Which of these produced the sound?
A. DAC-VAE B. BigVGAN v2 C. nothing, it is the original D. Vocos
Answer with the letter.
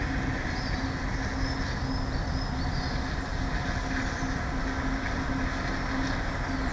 C